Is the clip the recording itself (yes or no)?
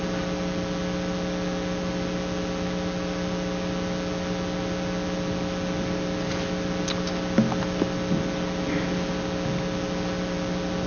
yes